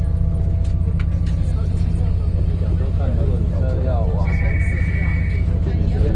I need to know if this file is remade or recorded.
recorded